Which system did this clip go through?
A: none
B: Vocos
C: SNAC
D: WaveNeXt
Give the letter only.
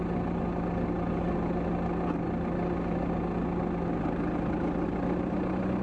A